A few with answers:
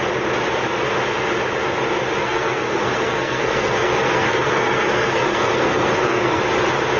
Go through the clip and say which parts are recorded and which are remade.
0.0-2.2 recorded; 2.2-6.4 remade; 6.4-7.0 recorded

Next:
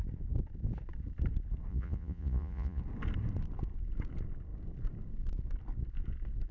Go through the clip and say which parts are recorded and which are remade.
0.0-1.7 recorded; 1.7-2.8 remade; 2.8-6.5 recorded

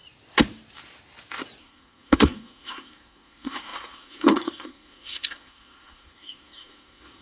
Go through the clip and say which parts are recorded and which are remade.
0.0-1.6 recorded; 1.6-7.2 remade

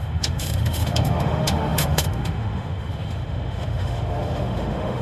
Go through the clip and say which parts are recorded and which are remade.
0.0-5.0 remade

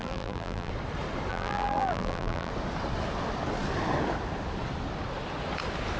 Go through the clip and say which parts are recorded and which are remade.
0.0-0.7 remade; 0.7-1.3 recorded; 1.3-2.5 remade; 2.5-6.0 recorded

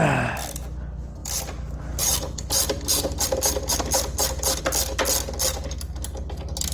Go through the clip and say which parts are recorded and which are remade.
0.0-1.2 recorded; 1.2-4.6 remade; 4.6-6.7 recorded